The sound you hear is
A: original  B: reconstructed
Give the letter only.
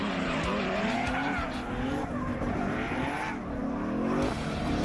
A